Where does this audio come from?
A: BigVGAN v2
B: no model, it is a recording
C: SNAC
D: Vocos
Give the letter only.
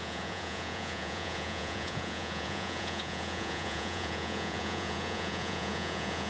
D